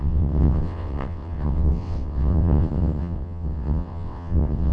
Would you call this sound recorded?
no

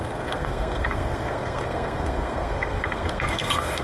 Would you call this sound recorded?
no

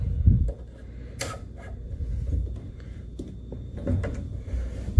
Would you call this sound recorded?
yes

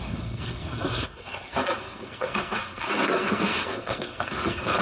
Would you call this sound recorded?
no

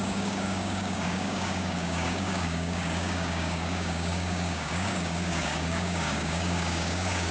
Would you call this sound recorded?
no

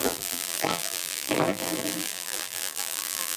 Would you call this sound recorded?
no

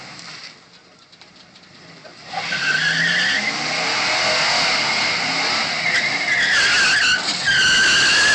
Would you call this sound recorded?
yes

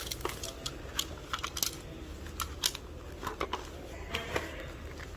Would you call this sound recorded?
yes